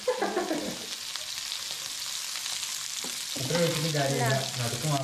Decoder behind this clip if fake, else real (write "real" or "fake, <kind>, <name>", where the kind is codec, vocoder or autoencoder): real